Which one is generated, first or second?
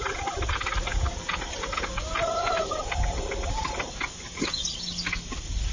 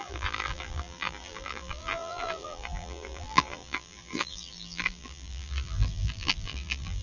second